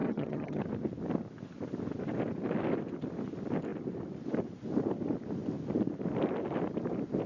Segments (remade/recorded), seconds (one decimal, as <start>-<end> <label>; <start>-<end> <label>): 0.0-0.6 remade; 0.6-7.3 recorded